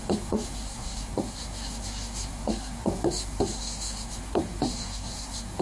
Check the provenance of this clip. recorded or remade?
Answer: remade